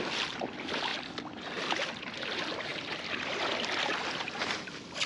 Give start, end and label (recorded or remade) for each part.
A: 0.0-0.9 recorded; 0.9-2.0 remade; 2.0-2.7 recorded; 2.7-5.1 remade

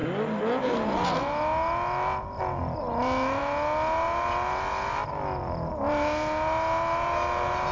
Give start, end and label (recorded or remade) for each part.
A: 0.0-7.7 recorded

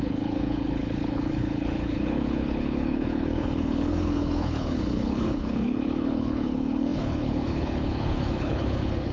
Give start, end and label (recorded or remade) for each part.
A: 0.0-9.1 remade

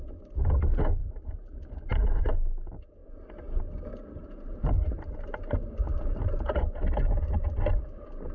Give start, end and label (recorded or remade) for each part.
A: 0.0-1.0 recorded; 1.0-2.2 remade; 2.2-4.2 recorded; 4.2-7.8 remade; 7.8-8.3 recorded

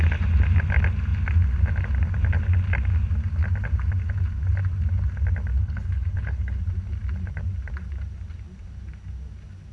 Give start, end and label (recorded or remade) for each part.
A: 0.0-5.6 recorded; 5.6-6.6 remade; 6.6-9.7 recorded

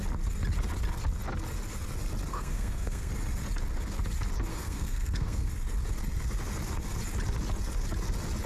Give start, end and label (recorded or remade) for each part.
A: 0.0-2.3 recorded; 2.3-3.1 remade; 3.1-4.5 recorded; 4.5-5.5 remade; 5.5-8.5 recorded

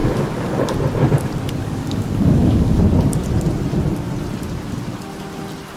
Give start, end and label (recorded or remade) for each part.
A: 0.0-0.6 remade; 0.6-1.6 recorded; 1.6-2.8 remade; 2.8-5.8 recorded